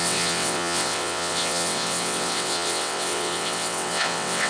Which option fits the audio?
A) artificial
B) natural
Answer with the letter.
A